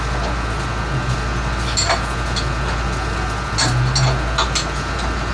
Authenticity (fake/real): real